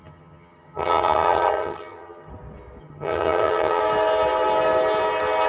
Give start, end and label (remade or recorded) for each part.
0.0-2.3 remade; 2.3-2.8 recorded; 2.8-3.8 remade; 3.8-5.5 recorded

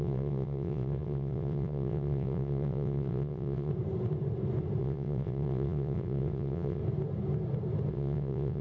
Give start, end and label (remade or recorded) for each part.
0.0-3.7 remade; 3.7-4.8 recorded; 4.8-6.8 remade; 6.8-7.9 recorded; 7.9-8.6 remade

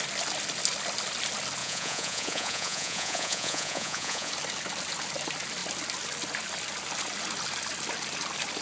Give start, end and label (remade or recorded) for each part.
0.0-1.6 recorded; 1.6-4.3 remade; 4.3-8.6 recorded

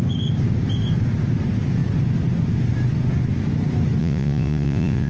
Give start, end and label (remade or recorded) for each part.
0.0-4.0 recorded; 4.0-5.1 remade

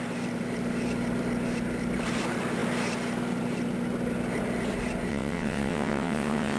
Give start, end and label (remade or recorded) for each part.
0.0-5.1 recorded; 5.1-6.6 remade